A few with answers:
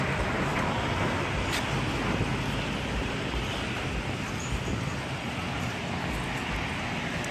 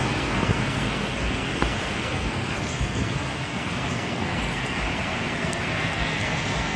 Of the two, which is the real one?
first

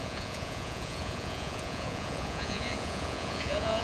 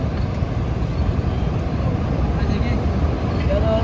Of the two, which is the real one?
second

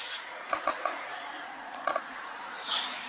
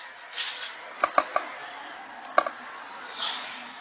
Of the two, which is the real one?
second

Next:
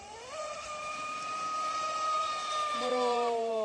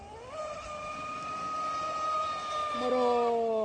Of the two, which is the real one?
second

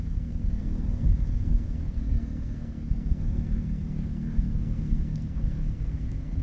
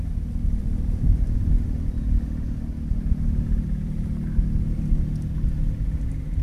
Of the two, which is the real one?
second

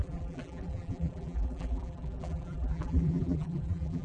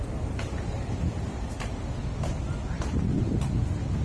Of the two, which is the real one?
second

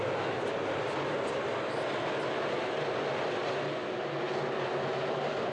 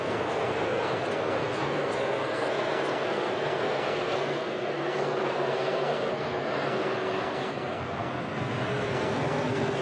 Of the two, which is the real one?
first